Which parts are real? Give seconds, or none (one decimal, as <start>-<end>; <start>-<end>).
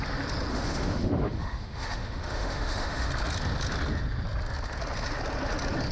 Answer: 0.0-0.5; 3.1-5.9